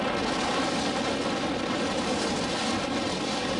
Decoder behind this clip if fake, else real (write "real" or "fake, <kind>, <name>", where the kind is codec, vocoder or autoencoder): real